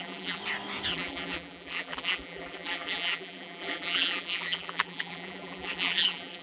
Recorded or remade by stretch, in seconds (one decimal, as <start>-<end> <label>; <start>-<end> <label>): 0.0-0.4 remade; 0.4-0.9 recorded; 0.9-6.4 remade